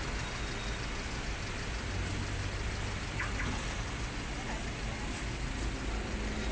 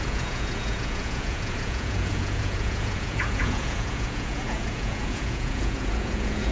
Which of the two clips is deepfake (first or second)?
second